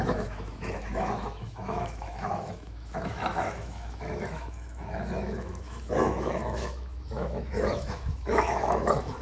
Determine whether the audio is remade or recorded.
remade